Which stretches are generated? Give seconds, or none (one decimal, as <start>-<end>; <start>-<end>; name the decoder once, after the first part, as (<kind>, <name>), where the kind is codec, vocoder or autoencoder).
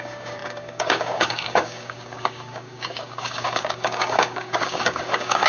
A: 0.0-5.5 (codec, DAC)